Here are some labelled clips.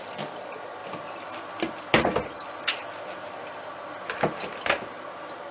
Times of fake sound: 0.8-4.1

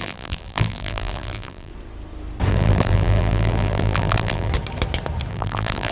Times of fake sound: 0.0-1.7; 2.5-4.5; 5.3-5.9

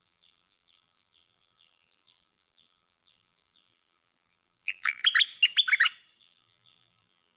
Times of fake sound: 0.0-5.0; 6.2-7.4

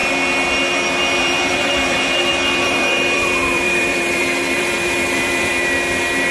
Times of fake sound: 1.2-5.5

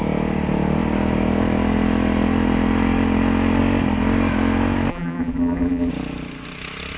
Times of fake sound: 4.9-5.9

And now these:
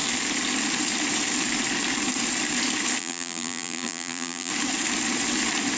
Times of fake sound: 3.0-4.5

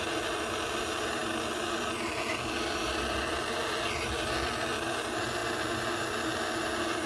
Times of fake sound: none

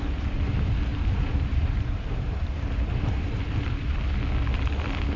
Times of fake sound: 0.9-4.0